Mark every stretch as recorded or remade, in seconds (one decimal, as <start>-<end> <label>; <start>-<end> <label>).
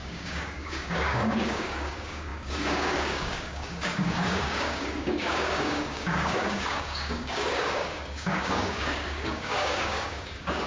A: 0.0-10.7 remade